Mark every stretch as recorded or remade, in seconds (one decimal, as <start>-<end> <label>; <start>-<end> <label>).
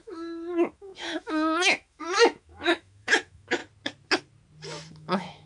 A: 0.0-3.6 remade; 3.6-4.9 recorded; 4.9-5.5 remade